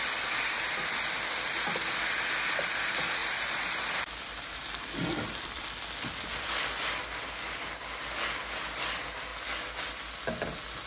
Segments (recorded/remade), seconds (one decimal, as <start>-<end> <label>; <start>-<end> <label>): 0.0-3.2 recorded; 3.2-5.0 remade; 5.0-10.9 recorded